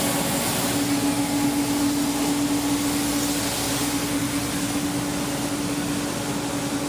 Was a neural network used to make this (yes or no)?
no